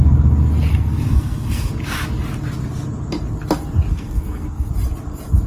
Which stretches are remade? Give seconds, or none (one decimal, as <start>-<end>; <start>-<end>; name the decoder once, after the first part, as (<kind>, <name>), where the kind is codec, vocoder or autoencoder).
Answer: 0.7-1.7 (codec, SNAC); 3.9-4.7